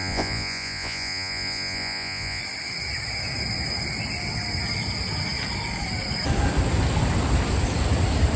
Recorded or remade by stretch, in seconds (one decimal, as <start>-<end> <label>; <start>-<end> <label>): 0.0-2.4 remade; 2.4-8.4 recorded